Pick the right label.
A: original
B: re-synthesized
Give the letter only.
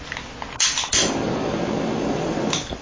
A